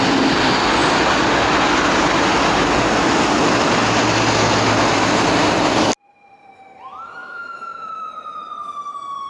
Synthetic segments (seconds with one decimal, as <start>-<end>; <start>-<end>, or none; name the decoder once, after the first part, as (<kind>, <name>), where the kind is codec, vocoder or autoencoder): 7.2-8.1 (autoencoder, DAC-VAE)